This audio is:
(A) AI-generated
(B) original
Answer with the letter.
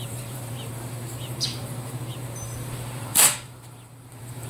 A